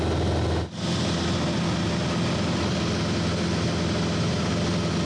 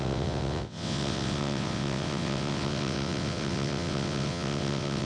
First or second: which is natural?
first